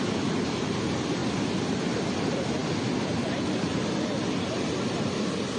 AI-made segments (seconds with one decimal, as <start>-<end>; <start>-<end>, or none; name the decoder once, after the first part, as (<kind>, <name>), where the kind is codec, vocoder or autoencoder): none